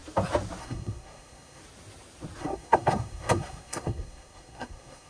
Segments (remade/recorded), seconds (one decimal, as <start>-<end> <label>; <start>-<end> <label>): 0.0-0.6 recorded; 0.6-1.6 remade; 1.6-2.4 recorded; 2.4-5.1 remade